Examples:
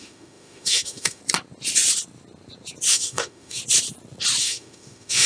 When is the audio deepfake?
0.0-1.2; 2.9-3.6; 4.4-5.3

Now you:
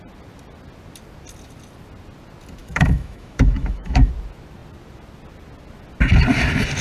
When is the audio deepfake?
2.6-4.1